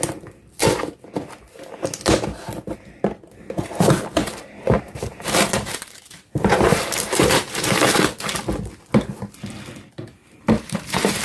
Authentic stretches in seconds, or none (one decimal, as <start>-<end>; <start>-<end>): 0.0-4.2; 8.0-10.2